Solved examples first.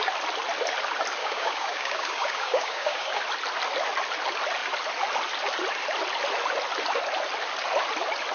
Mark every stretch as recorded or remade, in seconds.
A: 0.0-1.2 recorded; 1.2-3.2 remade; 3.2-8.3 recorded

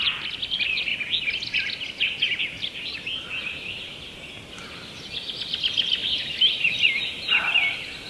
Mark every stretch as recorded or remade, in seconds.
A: 0.0-8.1 recorded

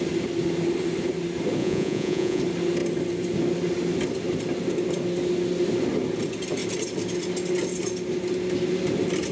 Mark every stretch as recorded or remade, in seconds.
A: 0.0-1.6 recorded; 1.6-2.4 remade; 2.4-9.3 recorded

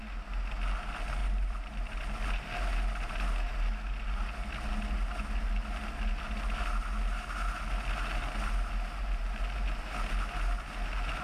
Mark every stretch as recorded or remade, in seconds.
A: 0.0-1.2 recorded; 1.2-1.9 remade; 1.9-11.2 recorded

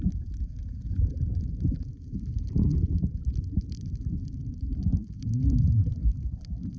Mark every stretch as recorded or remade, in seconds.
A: 0.0-6.0 remade; 6.0-6.8 recorded

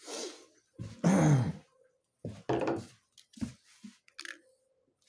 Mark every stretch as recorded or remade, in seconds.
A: 0.0-5.1 recorded

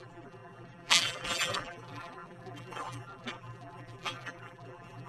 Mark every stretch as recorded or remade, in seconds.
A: 0.0-5.1 remade

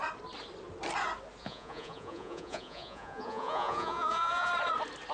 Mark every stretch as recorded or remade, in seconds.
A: 0.0-1.4 recorded; 1.4-4.5 remade; 4.5-5.1 recorded